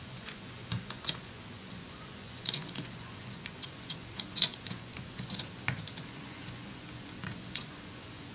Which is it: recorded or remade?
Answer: remade